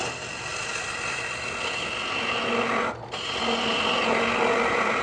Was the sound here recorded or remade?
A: recorded